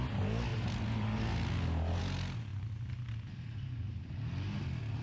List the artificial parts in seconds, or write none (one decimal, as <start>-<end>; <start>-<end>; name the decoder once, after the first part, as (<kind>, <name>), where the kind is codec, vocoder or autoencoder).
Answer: none